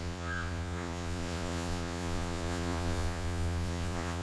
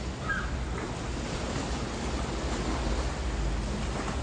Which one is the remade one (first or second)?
first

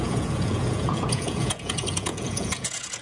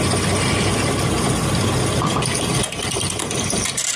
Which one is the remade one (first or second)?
first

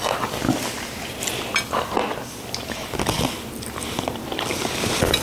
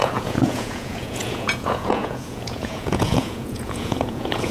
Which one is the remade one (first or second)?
second